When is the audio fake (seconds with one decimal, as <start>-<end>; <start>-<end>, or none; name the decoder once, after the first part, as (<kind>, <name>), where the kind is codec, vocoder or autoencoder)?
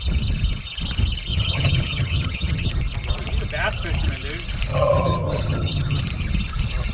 1.3-2.7 (vocoder, HiFi-GAN); 4.7-6.0